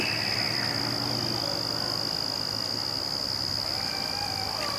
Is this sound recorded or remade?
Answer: recorded